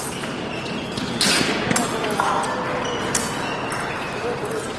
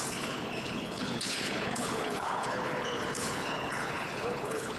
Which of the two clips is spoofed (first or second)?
second